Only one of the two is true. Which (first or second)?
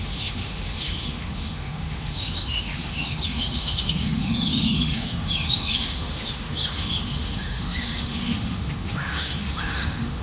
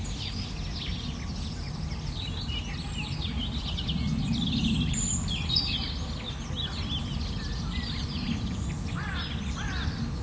second